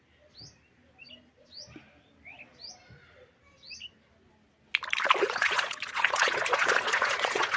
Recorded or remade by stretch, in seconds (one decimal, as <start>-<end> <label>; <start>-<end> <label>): 0.0-5.2 recorded; 5.2-7.6 remade